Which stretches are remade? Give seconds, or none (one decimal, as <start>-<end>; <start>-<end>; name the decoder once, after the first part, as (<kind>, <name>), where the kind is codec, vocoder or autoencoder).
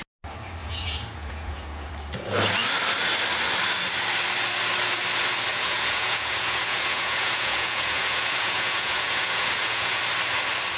0.6-1.9 (vocoder, Vocos); 5.5-10.0